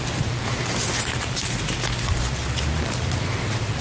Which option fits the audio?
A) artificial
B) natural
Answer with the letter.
B